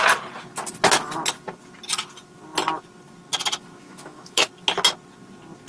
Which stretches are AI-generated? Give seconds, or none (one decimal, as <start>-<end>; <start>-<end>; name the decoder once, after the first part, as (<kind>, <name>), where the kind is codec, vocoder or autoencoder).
3.8-4.5 (autoencoder, DAC-VAE)

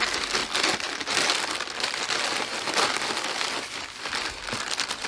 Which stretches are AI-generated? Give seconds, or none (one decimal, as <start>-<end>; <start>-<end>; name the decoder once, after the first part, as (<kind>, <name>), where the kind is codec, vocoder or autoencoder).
none

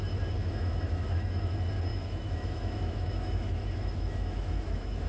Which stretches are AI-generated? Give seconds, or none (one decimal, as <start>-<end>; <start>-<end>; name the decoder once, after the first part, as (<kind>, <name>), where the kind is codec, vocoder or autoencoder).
0.4-1.5 (autoencoder, DAC-VAE); 1.9-5.1